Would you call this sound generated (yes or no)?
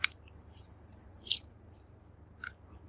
yes